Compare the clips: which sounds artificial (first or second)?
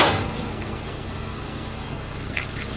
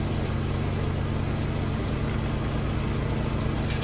first